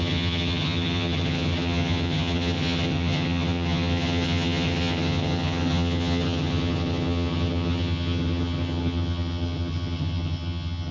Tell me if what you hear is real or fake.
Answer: fake